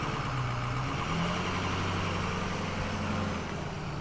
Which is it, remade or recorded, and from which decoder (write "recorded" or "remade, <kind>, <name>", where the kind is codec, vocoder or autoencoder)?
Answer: recorded